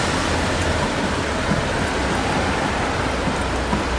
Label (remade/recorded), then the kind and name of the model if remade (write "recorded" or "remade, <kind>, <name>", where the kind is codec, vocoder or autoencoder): recorded